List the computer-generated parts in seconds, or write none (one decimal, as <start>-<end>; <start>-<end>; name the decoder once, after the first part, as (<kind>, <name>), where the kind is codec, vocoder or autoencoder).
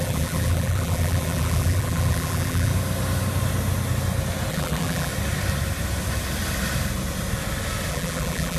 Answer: 0.0-2.7 (vocoder, BigVGAN v2); 4.5-5.1; 7.9-8.6